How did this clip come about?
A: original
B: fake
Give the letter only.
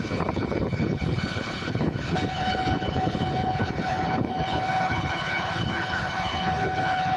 B